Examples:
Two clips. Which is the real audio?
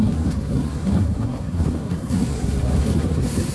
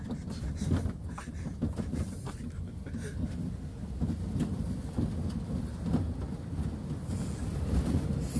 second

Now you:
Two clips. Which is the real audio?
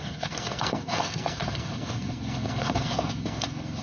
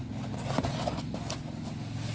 second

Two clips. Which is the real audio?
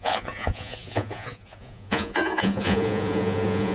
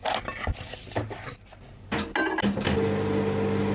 second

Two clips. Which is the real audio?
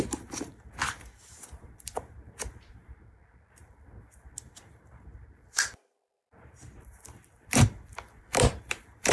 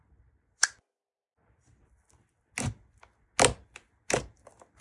second